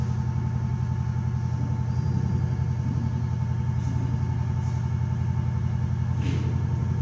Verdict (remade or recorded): recorded